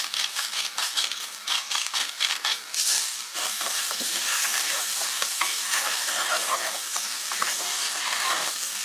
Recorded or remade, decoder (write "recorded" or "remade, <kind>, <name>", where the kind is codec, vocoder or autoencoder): remade, codec, DAC